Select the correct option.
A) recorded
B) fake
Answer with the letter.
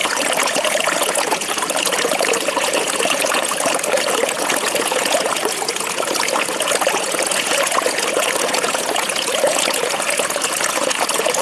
B